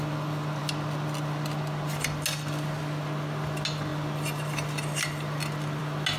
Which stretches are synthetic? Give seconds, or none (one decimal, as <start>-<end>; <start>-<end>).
none